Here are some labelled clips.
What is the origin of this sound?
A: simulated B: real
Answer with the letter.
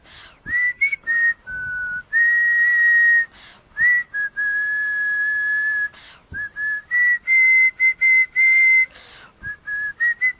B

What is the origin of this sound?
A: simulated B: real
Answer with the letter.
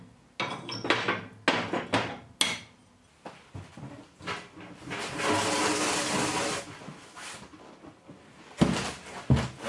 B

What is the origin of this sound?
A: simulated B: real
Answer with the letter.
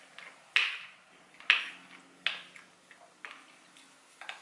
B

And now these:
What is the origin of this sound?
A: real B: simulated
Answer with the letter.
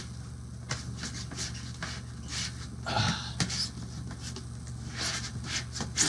A